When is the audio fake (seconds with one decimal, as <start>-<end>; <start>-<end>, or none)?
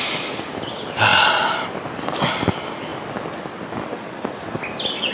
none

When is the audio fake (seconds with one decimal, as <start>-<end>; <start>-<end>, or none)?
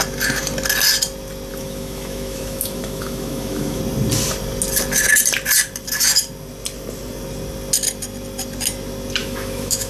1.5-3.8; 9.2-9.9